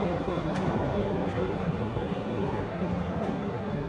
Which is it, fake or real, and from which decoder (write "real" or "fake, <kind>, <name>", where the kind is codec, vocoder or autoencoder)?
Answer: fake, codec, SNAC